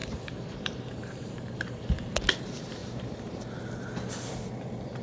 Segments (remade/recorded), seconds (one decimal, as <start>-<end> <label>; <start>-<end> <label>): 0.0-2.1 remade; 2.1-2.8 recorded; 2.8-3.4 remade; 3.4-5.0 recorded